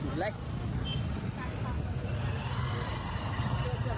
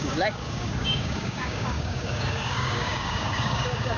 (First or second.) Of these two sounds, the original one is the first